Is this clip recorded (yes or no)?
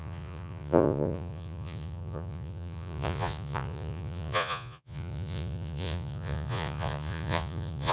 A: no